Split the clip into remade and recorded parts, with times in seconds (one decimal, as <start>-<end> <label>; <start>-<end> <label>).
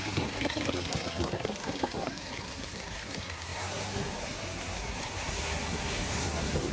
0.0-6.7 remade